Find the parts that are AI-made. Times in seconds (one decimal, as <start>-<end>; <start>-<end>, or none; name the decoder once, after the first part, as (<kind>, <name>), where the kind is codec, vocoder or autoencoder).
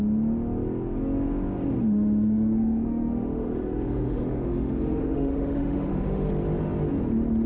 1.8-6.3 (autoencoder, DAC-VAE)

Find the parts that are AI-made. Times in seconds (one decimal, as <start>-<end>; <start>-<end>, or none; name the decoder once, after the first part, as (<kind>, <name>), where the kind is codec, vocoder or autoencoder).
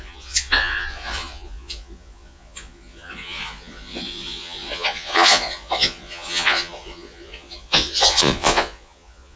0.0-9.4 (vocoder, Vocos)